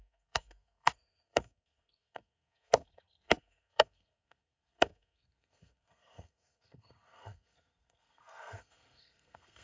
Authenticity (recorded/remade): remade